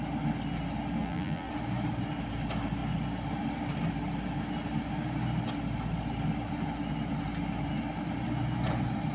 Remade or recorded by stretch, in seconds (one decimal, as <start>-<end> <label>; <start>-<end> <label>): 0.0-1.0 recorded; 1.0-1.5 remade; 1.5-9.1 recorded